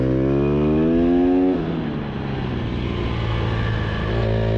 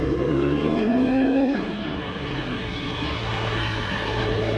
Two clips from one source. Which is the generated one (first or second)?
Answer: second